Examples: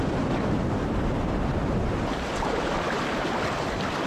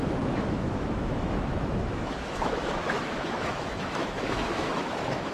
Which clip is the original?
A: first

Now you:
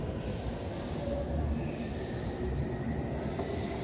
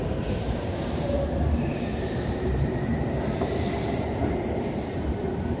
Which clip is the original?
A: first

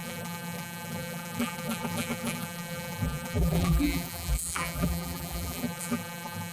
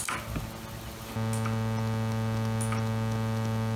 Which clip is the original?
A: second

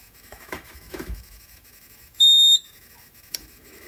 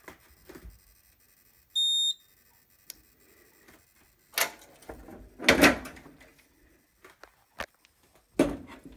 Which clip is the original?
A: second